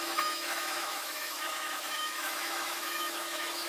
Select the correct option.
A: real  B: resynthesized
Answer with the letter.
B